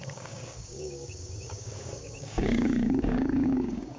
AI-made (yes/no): yes